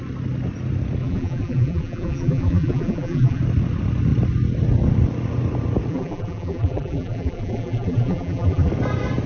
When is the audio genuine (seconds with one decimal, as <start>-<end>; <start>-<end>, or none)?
0.0-1.0; 3.4-5.9; 8.7-9.3